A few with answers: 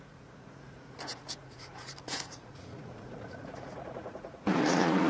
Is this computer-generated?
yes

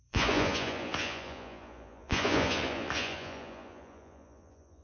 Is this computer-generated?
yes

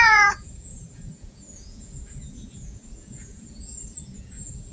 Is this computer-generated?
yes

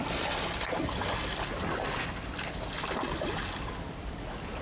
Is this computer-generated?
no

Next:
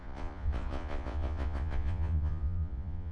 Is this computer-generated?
yes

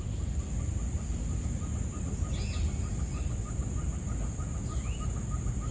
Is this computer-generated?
no